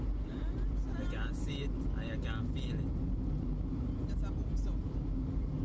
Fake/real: real